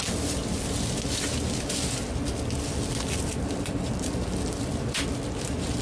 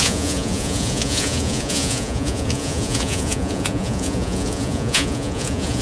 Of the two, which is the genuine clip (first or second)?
first